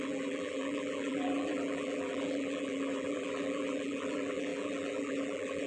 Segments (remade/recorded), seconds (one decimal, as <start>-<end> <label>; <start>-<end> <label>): 0.0-5.7 remade